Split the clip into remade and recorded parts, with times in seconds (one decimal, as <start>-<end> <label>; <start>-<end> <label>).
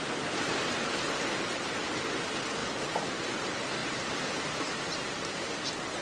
0.0-3.8 recorded; 3.8-5.4 remade; 5.4-6.0 recorded